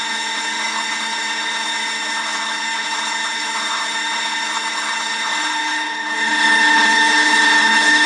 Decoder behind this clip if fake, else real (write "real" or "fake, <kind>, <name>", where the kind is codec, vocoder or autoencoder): fake, codec, HILCodec